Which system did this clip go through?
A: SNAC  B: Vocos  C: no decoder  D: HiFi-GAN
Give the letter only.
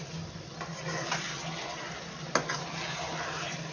C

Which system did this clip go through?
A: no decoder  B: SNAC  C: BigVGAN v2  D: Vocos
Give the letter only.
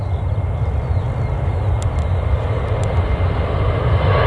A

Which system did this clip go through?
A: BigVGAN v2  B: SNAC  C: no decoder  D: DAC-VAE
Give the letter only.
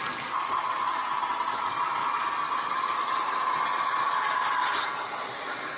C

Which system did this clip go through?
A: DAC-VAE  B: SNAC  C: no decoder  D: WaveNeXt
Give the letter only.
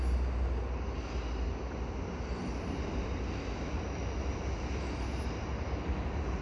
C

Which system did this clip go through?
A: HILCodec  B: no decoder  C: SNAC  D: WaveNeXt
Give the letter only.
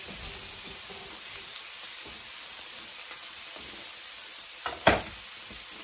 B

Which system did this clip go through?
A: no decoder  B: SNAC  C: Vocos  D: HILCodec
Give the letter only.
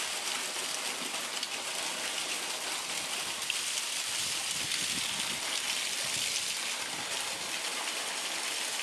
A